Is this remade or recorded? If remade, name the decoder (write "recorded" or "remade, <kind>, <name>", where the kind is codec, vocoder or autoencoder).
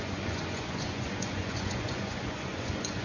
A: remade, vocoder, Vocos